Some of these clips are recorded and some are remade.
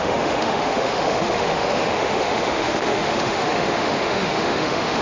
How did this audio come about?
remade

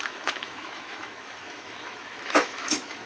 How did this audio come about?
remade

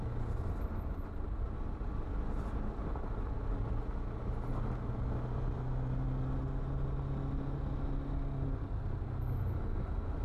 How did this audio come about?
recorded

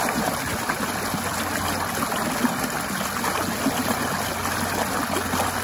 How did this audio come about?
recorded